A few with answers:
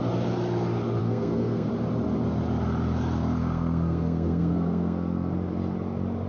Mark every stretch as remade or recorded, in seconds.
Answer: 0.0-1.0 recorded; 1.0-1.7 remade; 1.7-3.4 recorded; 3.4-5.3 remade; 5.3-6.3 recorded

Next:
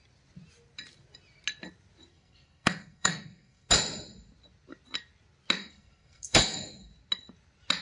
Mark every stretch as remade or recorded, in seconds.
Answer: 0.0-2.1 recorded; 2.1-3.7 remade; 3.7-5.6 recorded; 5.6-6.9 remade; 6.9-7.8 recorded

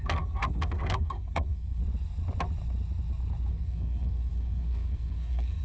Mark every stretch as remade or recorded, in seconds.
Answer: 0.0-1.8 remade; 1.8-3.5 recorded; 3.5-5.6 remade

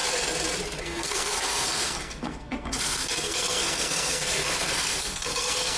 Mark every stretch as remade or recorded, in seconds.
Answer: 0.0-0.8 recorded; 0.8-5.8 remade

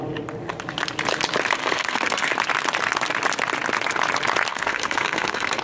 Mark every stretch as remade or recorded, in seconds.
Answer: 0.0-1.6 recorded; 1.6-2.3 remade; 2.3-4.5 recorded; 4.5-5.6 remade

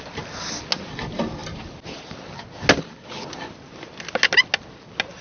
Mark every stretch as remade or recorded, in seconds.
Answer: 0.0-5.2 recorded